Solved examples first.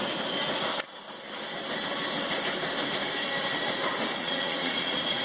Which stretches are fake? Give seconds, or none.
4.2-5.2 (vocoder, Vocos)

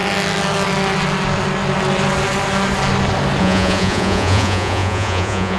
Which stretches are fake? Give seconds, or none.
3.4-5.6 (vocoder, Vocos)

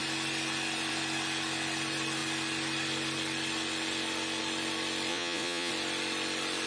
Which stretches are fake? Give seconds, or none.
5.1-5.7 (vocoder, Vocos)

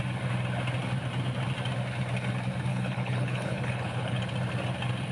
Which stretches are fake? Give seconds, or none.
2.7-4.2 (codec, HILCodec)

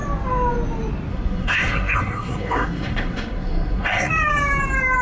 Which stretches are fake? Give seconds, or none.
1.1-4.1 (codec, SNAC)

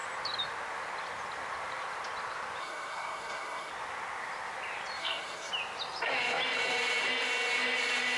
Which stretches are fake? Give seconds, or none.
2.6-3.7 (codec, SNAC); 5.0-5.5

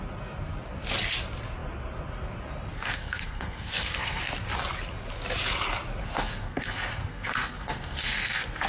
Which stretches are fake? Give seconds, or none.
2.7-4.2 (codec, SNAC); 6.0-8.7

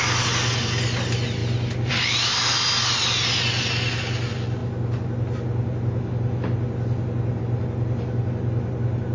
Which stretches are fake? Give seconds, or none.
none